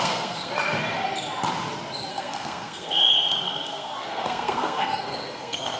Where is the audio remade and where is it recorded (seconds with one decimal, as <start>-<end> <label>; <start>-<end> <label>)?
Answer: 0.0-0.5 remade; 0.5-2.1 recorded; 2.1-5.8 remade